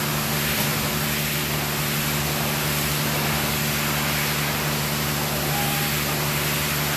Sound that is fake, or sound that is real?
real